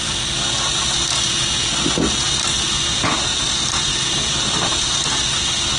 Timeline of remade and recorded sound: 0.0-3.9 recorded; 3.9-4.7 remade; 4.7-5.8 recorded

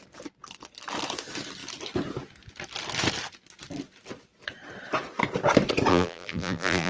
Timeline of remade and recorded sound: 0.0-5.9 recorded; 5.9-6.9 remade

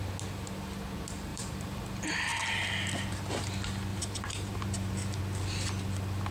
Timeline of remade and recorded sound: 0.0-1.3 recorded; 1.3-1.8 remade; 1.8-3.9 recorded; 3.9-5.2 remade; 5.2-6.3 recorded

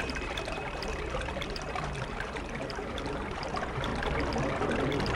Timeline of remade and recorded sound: 0.0-3.9 remade; 3.9-5.1 recorded

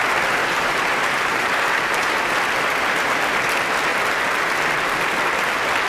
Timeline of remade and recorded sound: 0.0-0.4 recorded; 0.4-2.1 remade; 2.1-5.9 recorded

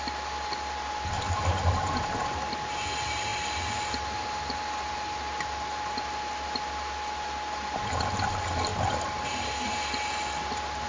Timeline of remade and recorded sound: 0.0-8.7 recorded; 8.7-9.3 remade; 9.3-10.9 recorded

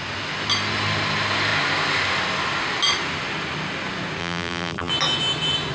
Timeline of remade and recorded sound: 0.0-4.2 recorded; 4.2-4.9 remade; 4.9-5.7 recorded

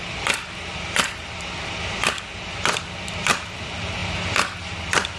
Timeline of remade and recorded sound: 0.0-5.2 remade